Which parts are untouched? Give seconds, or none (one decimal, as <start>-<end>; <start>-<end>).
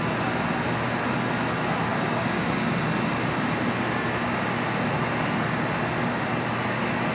0.0-7.1